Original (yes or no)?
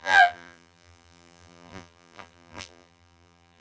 no